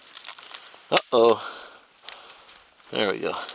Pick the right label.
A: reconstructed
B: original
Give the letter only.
B